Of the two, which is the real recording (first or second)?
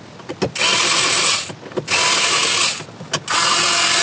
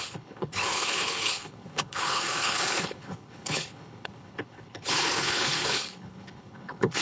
first